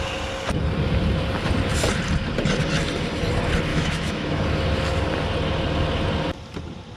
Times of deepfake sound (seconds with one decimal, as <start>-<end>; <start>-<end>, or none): 3.7-4.4